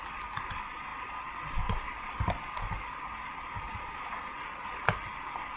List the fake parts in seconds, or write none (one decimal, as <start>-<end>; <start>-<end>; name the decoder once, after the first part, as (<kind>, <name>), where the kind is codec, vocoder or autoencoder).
none